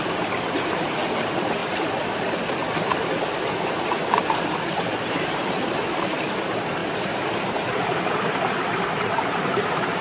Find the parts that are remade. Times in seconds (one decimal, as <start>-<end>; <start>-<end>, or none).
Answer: 0.0-1.6; 3.7-6.8; 7.3-10.0